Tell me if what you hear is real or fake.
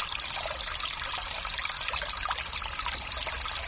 real